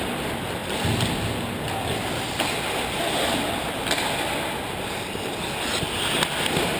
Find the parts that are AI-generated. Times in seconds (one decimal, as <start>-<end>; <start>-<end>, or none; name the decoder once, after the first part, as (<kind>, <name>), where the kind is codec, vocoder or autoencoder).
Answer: none

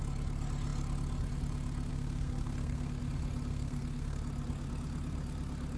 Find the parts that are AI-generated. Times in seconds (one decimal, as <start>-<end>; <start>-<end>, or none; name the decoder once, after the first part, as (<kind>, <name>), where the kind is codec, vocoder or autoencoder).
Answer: 1.9-3.0 (codec, SNAC); 3.5-4.2

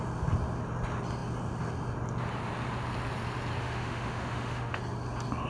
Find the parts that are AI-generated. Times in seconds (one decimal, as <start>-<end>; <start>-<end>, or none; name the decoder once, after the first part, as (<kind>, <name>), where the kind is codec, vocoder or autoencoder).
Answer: 3.6-4.8 (autoencoder, DAC-VAE)

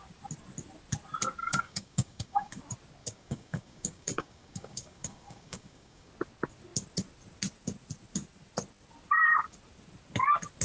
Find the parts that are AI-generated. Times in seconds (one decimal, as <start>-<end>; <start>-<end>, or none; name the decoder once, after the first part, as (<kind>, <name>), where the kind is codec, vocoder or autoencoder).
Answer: 1.4-2.6 (codec, DAC); 3.0-6.1

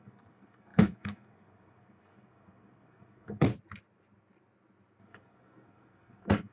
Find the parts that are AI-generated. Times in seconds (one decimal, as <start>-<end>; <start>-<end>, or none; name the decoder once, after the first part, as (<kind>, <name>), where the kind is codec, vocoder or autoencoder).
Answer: 0.0-3.5 (codec, SNAC); 5.0-6.5

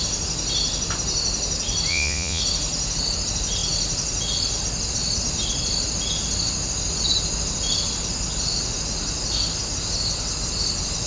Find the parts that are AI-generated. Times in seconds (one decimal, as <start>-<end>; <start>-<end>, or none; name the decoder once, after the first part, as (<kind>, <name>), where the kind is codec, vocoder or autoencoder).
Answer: 1.9-2.4 (vocoder, Vocos)

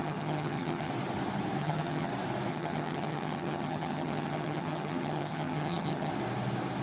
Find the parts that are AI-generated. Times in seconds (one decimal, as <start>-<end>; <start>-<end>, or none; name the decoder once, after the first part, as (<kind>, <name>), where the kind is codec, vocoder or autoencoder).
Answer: 0.0-0.9 (vocoder, HiFi-GAN); 1.6-2.1; 2.5-6.1